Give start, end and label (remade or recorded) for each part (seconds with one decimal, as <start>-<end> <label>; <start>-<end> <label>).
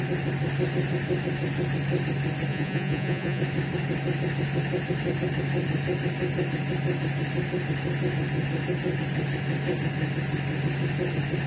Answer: 0.0-2.5 recorded; 2.5-3.4 remade; 3.4-11.5 recorded